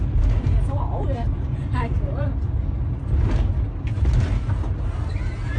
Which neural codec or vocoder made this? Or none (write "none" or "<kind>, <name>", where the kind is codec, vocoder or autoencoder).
none